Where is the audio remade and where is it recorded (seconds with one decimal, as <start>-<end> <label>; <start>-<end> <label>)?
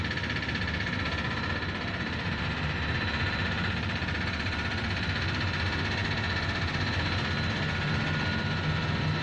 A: 0.0-9.2 recorded